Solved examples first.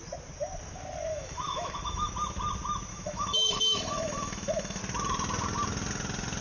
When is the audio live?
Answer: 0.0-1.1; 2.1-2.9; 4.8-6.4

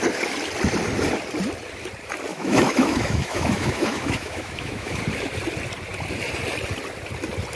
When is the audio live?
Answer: 0.0-2.3; 5.0-7.6

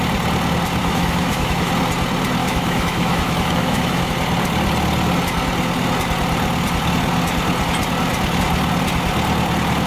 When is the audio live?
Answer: 0.0-0.8; 1.7-2.4; 4.1-9.9

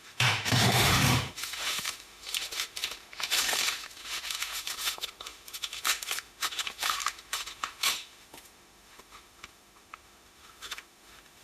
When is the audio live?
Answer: none

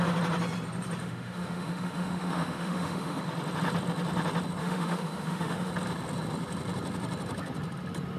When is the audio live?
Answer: 0.0-1.0; 3.2-4.6; 5.7-8.2

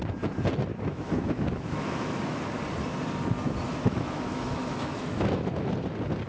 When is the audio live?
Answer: 0.0-0.7; 2.4-3.7; 5.8-6.3